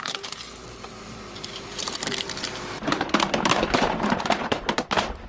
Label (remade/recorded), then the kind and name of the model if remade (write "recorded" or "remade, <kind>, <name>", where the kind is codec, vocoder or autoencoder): remade, vocoder, BigVGAN v2